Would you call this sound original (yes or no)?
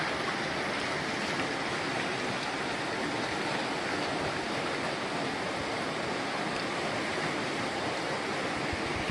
yes